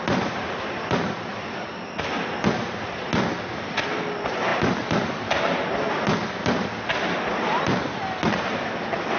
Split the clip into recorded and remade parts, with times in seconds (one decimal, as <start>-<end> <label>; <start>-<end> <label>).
0.0-9.2 recorded